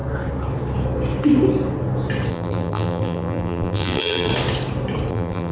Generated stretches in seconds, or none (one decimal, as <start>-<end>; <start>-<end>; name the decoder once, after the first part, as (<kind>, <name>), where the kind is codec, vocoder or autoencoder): 2.3-4.3 (vocoder, BigVGAN v2); 5.1-5.5